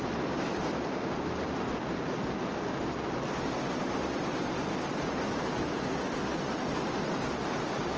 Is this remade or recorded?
recorded